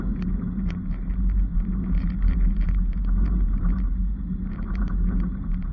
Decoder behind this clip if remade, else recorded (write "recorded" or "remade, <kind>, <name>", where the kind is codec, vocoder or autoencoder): remade, vocoder, BigVGAN v2